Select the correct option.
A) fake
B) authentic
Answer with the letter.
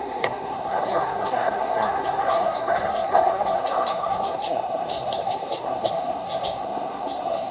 A